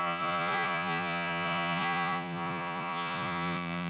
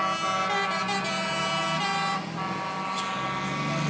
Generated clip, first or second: first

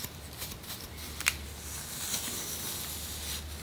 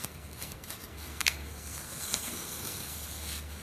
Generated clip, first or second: second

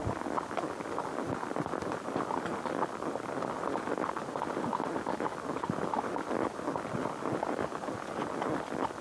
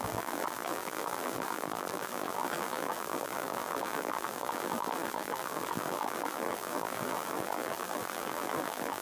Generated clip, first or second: second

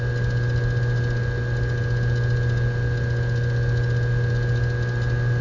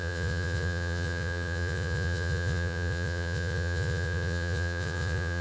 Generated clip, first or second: second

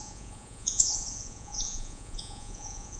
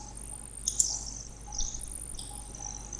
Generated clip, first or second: first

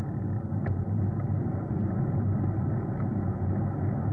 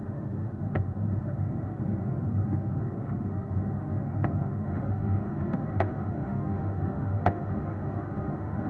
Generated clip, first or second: second